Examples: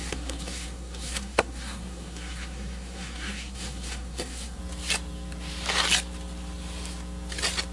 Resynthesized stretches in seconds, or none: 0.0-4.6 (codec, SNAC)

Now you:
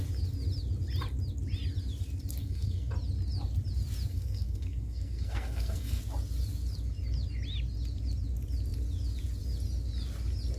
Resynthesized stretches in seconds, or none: 2.4-2.9 (codec, SNAC); 4.1-6.0

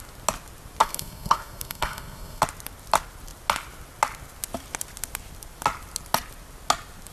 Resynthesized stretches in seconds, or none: 0.8-2.4 (codec, SNAC)

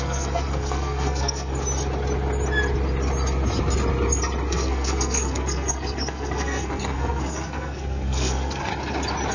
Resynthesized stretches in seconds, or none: 0.0-1.5 (codec, SNAC); 4.5-8.7

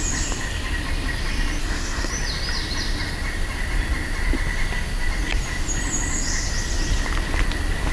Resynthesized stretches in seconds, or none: 1.6-2.1 (codec, SNAC)